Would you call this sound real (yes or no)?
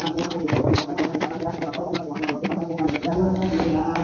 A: yes